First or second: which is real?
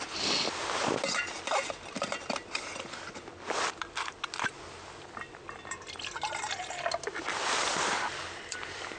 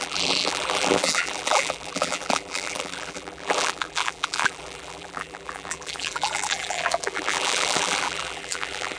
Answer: first